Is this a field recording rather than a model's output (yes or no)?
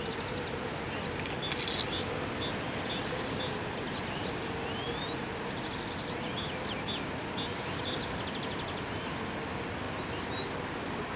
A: yes